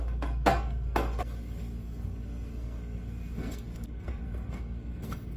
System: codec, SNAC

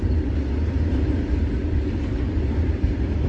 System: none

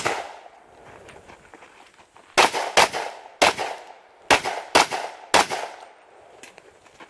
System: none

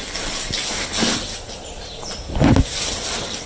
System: none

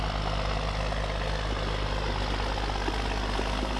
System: none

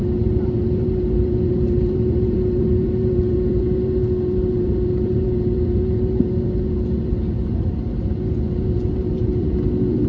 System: vocoder, BigVGAN v2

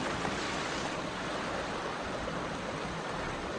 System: none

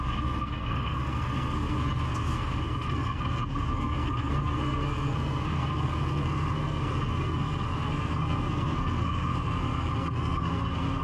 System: codec, SNAC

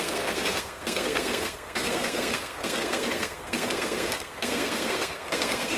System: codec, SNAC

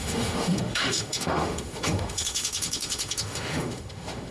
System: autoencoder, DAC-VAE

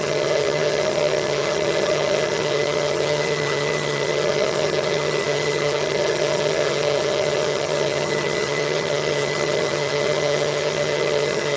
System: vocoder, HiFi-GAN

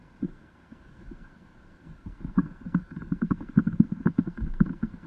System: codec, SNAC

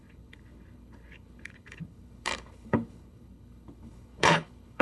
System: codec, HILCodec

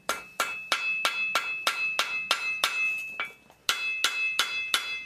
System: none